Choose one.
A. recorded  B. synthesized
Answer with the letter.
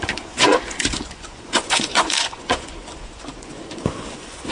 B